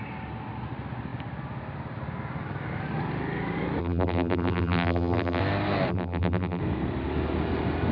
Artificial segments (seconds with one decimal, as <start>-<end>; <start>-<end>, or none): 3.8-5.4; 5.9-6.6